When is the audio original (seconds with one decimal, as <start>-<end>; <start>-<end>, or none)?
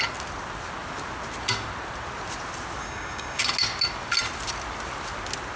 0.0-2.8; 3.4-5.6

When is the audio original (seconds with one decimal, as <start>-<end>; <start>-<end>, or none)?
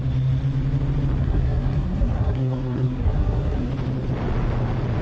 0.0-1.2; 3.7-5.0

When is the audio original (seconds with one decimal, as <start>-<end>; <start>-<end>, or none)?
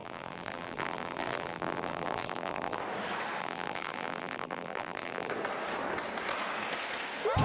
2.8-3.4; 5.3-7.4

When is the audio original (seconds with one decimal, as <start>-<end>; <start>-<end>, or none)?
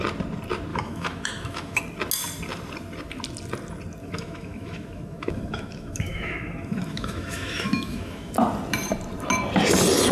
0.0-0.7; 1.8-4.0; 8.3-10.1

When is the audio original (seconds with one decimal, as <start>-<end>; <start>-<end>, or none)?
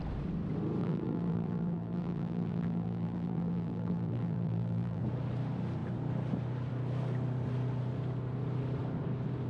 0.0-0.8; 5.0-9.5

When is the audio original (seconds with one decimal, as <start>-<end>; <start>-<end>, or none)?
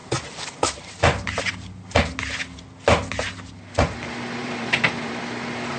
0.0-4.4; 5.2-5.8